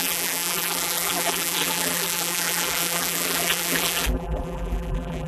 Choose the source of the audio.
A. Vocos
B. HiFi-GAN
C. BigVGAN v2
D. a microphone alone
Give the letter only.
C